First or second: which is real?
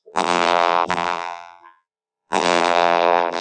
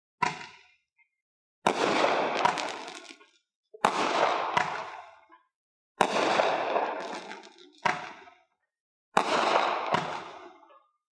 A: second